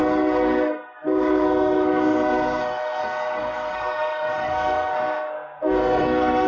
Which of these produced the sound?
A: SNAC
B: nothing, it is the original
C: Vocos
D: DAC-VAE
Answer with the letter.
A